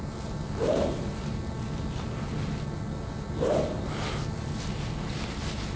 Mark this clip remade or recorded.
recorded